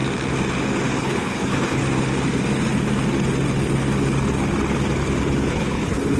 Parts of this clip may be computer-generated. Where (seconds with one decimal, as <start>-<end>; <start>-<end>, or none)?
1.0-1.8; 5.5-6.2